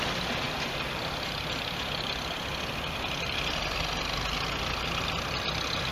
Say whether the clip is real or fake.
real